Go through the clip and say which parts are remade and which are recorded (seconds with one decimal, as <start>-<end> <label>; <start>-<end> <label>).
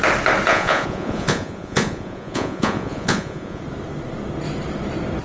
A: 0.0-0.5 recorded; 0.5-3.6 remade; 3.6-5.2 recorded